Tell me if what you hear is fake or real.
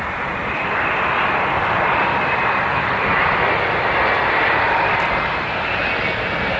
real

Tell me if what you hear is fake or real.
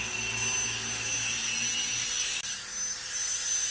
real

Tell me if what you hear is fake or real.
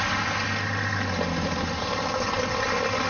real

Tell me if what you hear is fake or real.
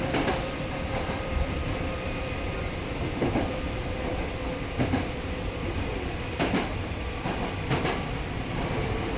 fake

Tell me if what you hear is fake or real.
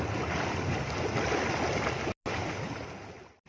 real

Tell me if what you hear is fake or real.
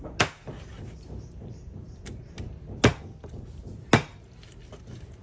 real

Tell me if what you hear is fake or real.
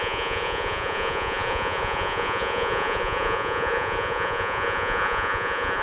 fake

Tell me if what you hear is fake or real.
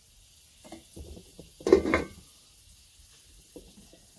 real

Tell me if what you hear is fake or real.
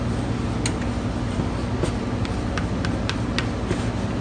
real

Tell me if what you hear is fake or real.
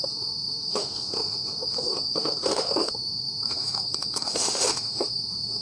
fake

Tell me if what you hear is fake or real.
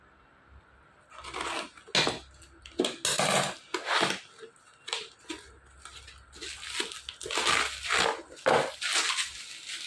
real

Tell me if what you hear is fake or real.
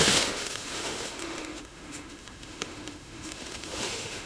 fake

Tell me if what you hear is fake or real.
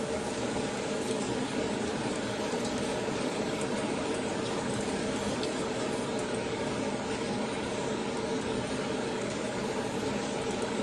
fake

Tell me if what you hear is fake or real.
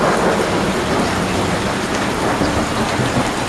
real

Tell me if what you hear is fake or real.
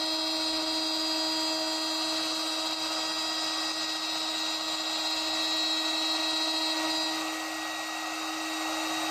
real